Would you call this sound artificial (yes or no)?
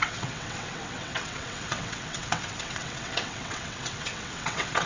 yes